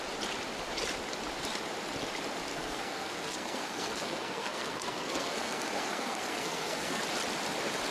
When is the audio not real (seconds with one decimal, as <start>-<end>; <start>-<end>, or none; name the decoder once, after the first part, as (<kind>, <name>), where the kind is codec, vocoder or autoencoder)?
2.5-7.0 (codec, SNAC)